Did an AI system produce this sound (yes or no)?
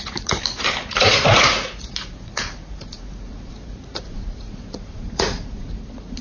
yes